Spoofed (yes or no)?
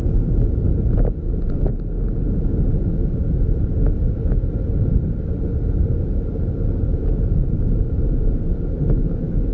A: no